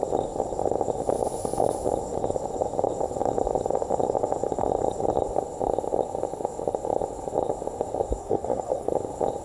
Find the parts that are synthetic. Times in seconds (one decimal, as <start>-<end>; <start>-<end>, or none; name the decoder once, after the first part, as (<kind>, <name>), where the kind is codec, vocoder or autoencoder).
8.2-8.9 (codec, SNAC)